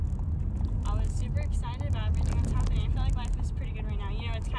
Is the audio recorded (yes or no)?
yes